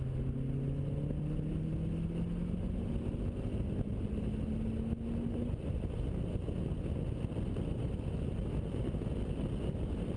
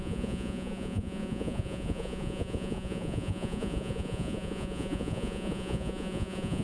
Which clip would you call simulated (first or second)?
second